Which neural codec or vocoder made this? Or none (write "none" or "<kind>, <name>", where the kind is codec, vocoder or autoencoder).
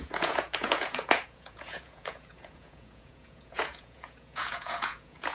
vocoder, Vocos